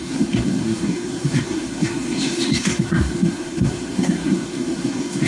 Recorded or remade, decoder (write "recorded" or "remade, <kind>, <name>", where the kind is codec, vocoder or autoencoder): remade, codec, SNAC